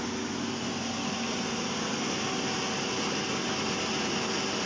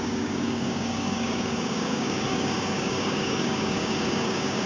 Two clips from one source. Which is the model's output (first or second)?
second